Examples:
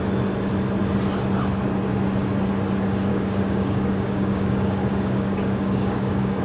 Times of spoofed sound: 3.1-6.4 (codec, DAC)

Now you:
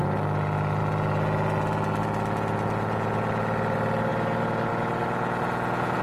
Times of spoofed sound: none

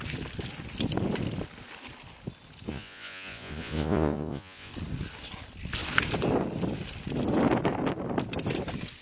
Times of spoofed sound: 2.7-4.7 (vocoder, Vocos)

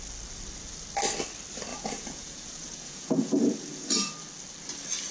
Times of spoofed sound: 1.7-4.1 (vocoder, Vocos)

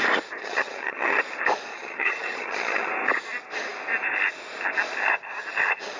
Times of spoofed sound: 0.4-1.2 (vocoder, HiFi-GAN); 1.7-2.9

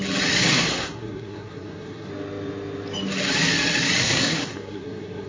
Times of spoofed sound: 0.5-2.1 (codec, SNAC); 4.0-5.3

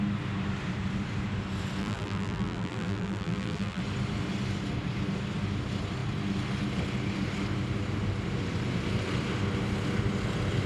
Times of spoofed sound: 1.8-3.8 (vocoder, BigVGAN v2)